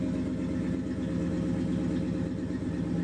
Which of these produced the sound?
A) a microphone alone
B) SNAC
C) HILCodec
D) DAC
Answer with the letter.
A